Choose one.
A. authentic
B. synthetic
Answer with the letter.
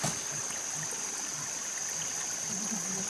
A